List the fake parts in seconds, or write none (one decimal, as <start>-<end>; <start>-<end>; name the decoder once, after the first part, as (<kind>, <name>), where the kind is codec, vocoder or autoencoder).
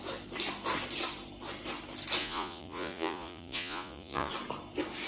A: 2.2-4.3 (vocoder, Vocos)